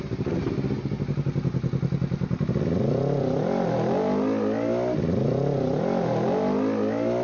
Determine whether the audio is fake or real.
real